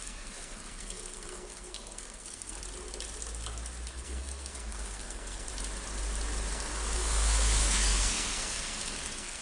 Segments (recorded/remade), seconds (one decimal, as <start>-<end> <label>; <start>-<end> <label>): 0.0-2.6 remade; 2.6-3.9 recorded; 3.9-5.5 remade; 5.5-6.5 recorded; 6.5-9.4 remade